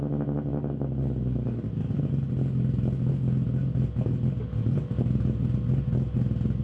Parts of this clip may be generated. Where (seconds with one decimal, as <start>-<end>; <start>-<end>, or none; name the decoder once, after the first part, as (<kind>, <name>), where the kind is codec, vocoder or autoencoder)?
none